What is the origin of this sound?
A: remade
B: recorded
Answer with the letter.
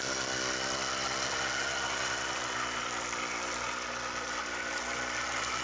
B